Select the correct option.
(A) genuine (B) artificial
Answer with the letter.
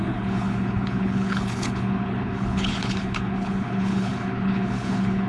B